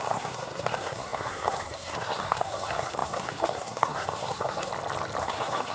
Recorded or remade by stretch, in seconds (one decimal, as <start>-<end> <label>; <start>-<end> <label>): 0.0-4.7 remade; 4.7-5.2 recorded; 5.2-5.7 remade